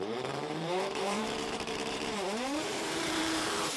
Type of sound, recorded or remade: remade